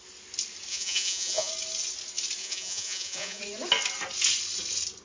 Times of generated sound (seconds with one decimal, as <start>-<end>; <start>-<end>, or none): 0.7-1.5; 2.4-3.4